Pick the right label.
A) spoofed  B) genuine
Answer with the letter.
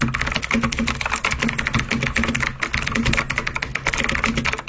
B